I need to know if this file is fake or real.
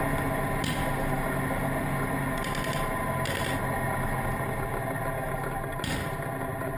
real